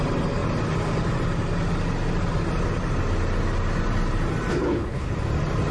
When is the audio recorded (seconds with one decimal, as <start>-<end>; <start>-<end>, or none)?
0.0-4.5; 5.1-5.7